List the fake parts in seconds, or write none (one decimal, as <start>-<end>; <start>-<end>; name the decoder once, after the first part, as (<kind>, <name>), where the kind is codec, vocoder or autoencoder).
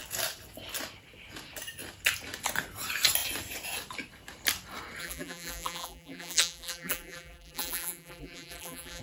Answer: 5.0-9.0 (vocoder, BigVGAN v2)